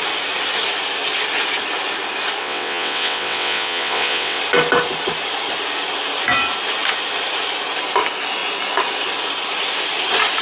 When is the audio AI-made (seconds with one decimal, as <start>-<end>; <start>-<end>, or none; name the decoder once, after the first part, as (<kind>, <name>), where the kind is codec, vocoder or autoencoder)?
2.4-4.4 (vocoder, WaveNeXt)